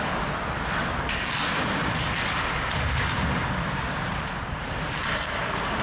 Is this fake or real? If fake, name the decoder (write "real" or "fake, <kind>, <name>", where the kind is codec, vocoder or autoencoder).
real